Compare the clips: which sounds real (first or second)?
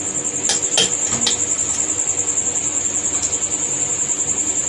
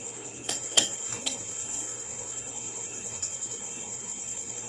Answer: first